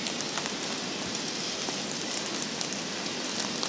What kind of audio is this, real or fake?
real